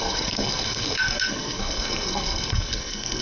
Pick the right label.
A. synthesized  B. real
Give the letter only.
A